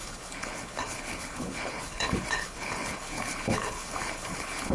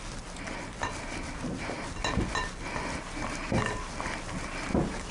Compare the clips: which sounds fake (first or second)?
first